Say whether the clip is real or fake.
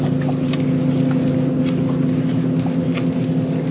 real